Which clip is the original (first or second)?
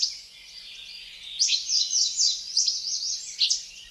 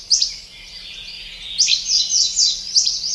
second